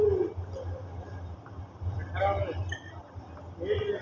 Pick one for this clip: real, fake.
real